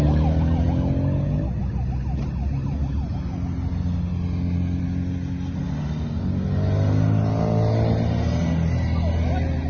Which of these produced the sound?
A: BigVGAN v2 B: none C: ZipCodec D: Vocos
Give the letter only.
B